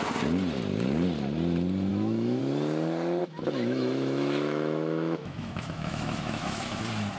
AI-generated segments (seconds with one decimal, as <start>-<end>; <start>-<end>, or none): 1.9-2.4; 3.2-6.8